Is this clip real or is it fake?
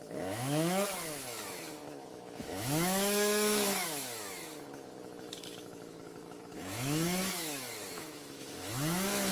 fake